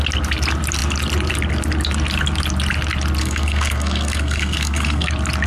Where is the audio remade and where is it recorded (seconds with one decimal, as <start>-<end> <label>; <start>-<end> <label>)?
0.0-3.2 recorded; 3.2-5.1 remade; 5.1-5.5 recorded